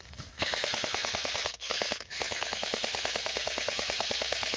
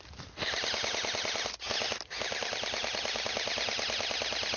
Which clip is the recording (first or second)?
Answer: second